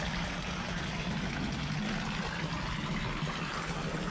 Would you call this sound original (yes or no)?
yes